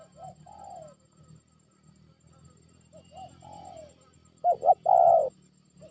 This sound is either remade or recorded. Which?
recorded